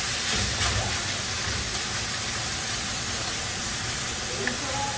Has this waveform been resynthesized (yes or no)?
no